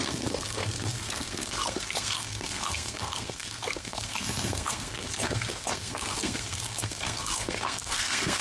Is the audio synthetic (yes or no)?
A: yes